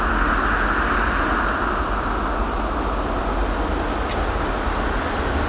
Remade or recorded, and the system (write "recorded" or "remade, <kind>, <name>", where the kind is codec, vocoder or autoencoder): recorded